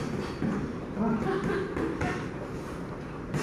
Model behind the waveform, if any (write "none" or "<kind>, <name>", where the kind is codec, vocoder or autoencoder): none